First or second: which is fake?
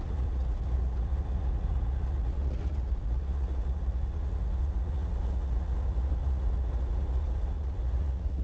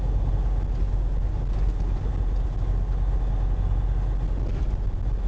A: first